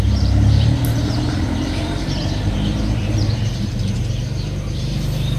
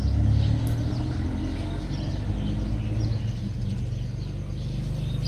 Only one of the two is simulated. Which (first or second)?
first